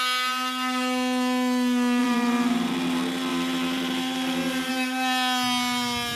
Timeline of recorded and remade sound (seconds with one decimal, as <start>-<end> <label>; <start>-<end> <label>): 0.0-2.0 recorded; 2.0-2.7 remade; 2.7-3.3 recorded; 3.3-4.7 remade; 4.7-6.2 recorded